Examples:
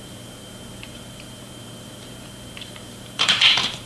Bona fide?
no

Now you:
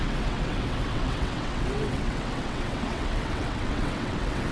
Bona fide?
no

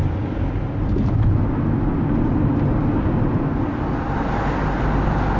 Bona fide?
yes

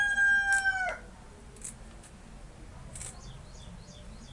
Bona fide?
yes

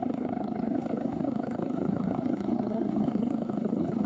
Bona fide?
no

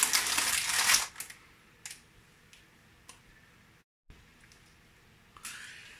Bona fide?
yes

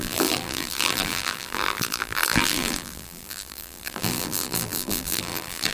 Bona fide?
no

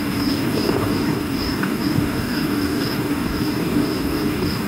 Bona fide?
no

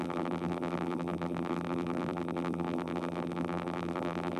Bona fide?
no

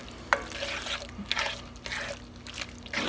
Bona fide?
yes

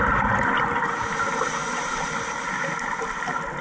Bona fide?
yes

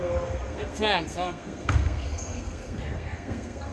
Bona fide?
no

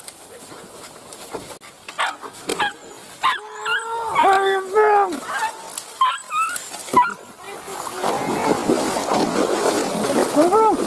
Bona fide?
yes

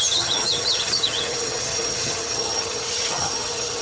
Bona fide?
no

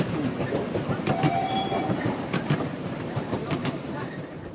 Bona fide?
no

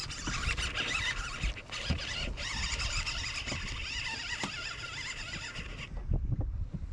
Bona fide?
yes